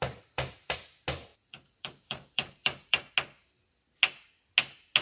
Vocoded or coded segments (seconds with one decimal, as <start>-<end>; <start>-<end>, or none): 0.0-0.8; 1.3-3.1